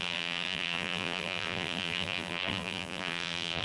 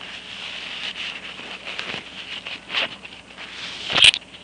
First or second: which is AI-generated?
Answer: first